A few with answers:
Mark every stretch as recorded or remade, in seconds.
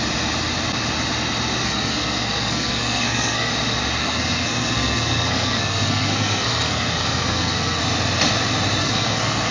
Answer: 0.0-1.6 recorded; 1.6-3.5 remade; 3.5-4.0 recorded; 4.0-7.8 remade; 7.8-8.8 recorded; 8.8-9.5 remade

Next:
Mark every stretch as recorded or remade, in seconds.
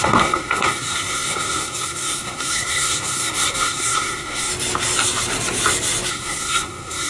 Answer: 0.0-4.5 remade; 4.5-6.1 recorded; 6.1-7.1 remade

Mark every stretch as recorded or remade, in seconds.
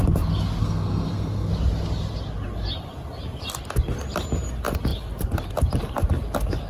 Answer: 0.0-0.6 recorded; 0.6-1.5 remade; 1.5-6.7 recorded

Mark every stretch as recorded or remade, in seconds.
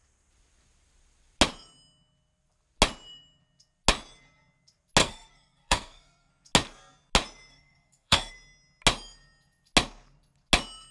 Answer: 0.0-5.0 recorded; 5.0-6.3 remade; 6.3-7.5 recorded; 7.5-8.3 remade; 8.3-10.9 recorded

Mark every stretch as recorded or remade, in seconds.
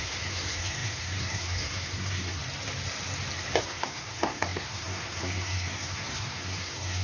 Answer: 0.0-2.4 remade; 2.4-3.6 recorded; 3.6-7.0 remade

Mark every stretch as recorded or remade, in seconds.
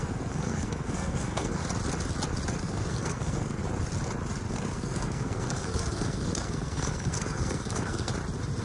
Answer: 0.0-1.6 remade; 1.6-2.6 recorded; 2.6-3.6 remade; 3.6-4.5 recorded; 4.5-8.1 remade; 8.1-8.6 recorded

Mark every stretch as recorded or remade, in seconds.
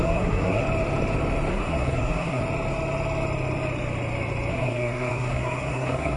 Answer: 0.0-0.6 remade; 0.6-1.5 recorded; 1.5-2.4 remade; 2.4-4.5 recorded; 4.5-6.2 remade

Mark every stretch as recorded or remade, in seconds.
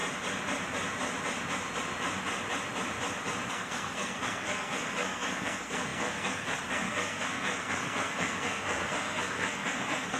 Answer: 0.0-3.5 recorded; 3.5-10.2 remade